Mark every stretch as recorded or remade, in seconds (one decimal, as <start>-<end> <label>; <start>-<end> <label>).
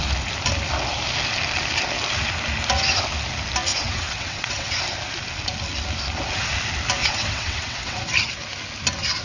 0.0-3.7 recorded; 3.7-4.8 remade; 4.8-7.0 recorded; 7.0-8.0 remade; 8.0-9.2 recorded